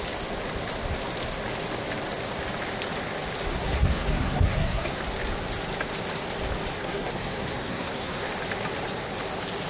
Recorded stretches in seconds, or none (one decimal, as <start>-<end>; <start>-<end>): 0.0-3.5; 5.0-6.7; 8.3-9.7